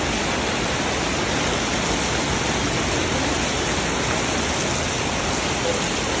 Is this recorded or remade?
recorded